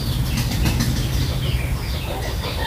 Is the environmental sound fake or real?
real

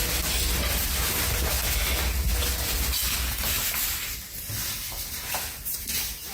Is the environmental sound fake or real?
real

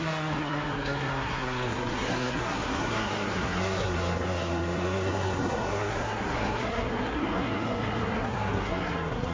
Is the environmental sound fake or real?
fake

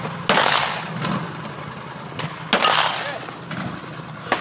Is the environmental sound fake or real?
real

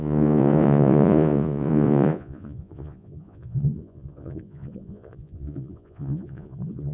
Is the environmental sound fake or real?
fake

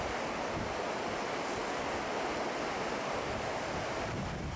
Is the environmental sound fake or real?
real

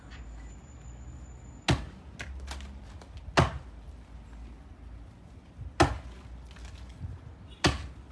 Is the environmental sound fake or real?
real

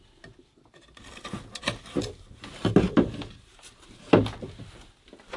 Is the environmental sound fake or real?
real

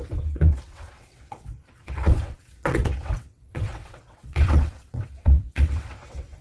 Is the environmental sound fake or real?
fake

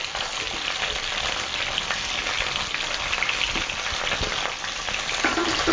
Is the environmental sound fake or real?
real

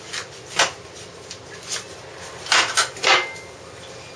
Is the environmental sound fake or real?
real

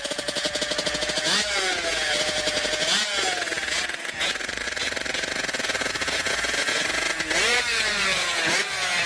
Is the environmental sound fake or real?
fake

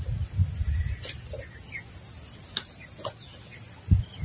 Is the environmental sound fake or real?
real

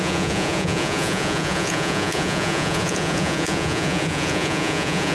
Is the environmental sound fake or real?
fake